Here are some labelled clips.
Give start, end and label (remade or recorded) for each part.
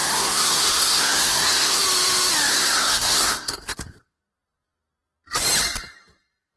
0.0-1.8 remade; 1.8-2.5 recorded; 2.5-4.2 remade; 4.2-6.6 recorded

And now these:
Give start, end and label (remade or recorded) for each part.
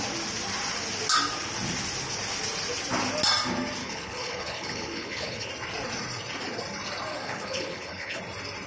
0.0-3.8 recorded; 3.8-5.5 remade; 5.5-7.1 recorded; 7.1-8.2 remade; 8.2-8.7 recorded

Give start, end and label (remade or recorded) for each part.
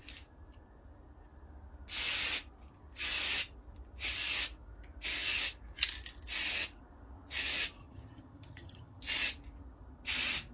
0.0-7.8 recorded; 7.8-9.0 remade; 9.0-10.5 recorded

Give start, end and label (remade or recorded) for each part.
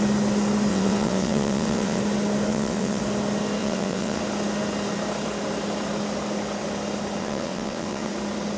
0.0-0.7 recorded; 0.7-2.0 remade; 2.0-2.5 recorded; 2.5-3.0 remade; 3.0-3.6 recorded; 3.6-4.2 remade; 4.2-7.2 recorded; 7.2-8.1 remade; 8.1-8.6 recorded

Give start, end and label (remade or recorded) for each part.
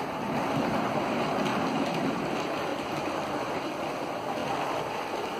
0.0-1.5 recorded; 1.5-2.3 remade; 2.3-2.7 recorded; 2.7-3.8 remade; 3.8-5.4 recorded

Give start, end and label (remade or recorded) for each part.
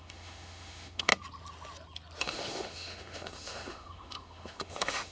0.0-1.1 remade; 1.1-2.2 recorded; 2.2-5.1 remade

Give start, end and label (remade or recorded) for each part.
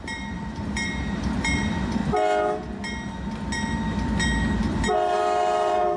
0.0-2.0 remade; 2.0-4.6 recorded; 4.6-6.0 remade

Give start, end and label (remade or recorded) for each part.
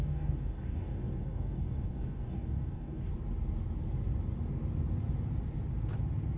0.0-3.1 remade; 3.1-6.4 recorded